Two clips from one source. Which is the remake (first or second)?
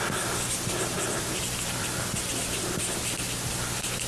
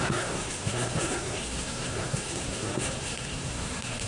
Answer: second